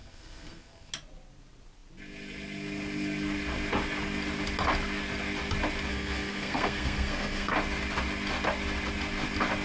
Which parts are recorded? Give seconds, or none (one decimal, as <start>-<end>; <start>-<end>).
0.9-5.9; 7.5-9.6